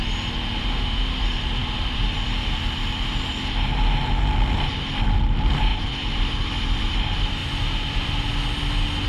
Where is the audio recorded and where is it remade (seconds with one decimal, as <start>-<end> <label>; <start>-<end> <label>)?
0.0-0.6 recorded; 0.6-1.2 remade; 1.2-9.1 recorded